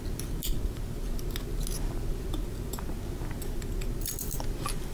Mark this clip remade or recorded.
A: recorded